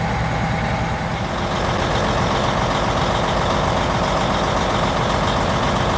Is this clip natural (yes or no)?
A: yes